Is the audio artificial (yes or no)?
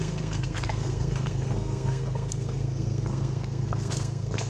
yes